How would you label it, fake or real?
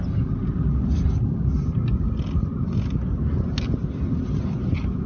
real